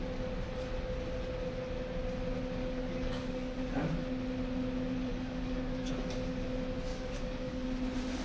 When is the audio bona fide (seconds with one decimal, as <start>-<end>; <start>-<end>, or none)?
0.0-2.6; 3.6-5.1; 5.9-6.9; 7.7-8.2